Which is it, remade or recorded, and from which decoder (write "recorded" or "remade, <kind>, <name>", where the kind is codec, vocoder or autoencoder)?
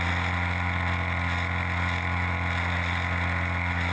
recorded